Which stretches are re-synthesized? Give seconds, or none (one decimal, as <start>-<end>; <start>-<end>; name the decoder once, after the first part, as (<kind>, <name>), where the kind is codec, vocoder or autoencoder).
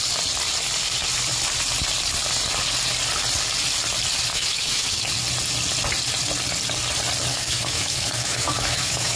4.3-5.1 (autoencoder, DAC-VAE); 7.3-9.2